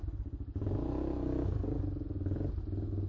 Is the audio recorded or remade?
recorded